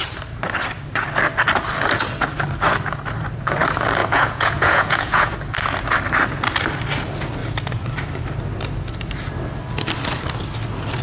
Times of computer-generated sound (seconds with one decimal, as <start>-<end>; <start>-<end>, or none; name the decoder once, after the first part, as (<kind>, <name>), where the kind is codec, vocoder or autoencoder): 4.0-5.3 (vocoder, Vocos)